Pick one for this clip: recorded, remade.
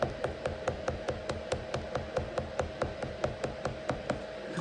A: recorded